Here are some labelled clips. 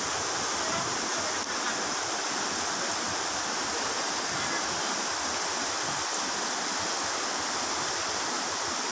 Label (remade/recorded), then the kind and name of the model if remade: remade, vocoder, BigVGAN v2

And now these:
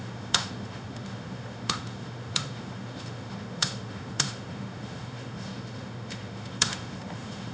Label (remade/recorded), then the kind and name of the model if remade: remade, autoencoder, DAC-VAE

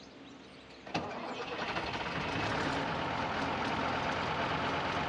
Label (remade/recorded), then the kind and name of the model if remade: recorded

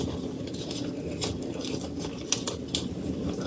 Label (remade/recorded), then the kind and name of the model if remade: recorded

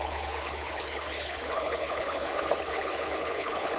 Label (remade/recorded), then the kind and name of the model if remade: remade, codec, HILCodec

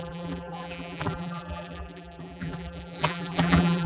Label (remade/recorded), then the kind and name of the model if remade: remade, vocoder, BigVGAN v2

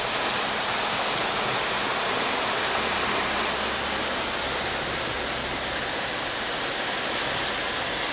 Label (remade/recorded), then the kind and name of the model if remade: recorded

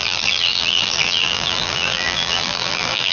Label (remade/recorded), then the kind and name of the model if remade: remade, vocoder, BigVGAN v2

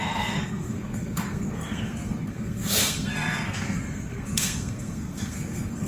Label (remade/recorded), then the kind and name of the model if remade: remade, codec, SNAC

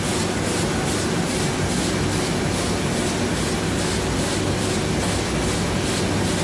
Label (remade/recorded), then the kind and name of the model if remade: recorded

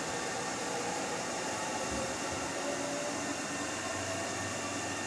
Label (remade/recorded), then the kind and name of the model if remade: remade, vocoder, BigVGAN v2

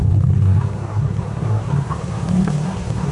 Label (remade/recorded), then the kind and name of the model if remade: remade, codec, SNAC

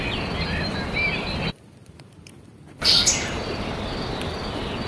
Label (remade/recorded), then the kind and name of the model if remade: recorded